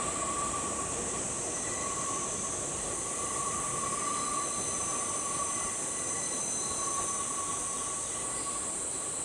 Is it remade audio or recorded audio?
recorded